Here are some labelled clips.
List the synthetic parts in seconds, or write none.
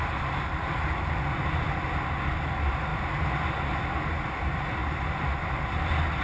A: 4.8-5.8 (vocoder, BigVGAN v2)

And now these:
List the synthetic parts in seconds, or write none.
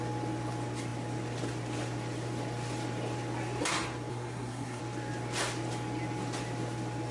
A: 4.1-4.8 (codec, SNAC)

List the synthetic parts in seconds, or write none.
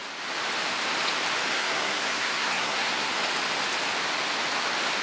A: 1.5-3.1 (codec, SNAC)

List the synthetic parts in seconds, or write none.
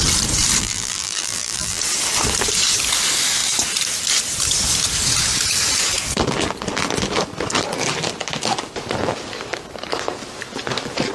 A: 0.6-1.8 (vocoder, BigVGAN v2)